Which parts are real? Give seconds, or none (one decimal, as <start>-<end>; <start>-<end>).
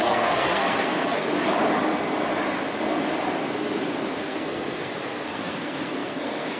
1.3-4.2